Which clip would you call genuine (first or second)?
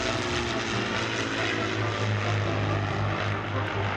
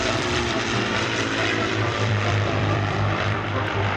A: first